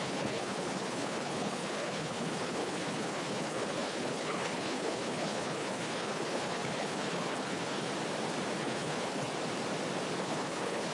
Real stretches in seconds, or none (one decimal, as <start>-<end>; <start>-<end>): 7.9-8.6; 9.3-10.2